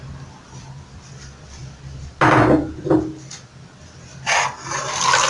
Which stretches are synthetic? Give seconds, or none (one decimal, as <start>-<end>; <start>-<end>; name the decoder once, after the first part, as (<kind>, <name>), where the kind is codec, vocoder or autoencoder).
none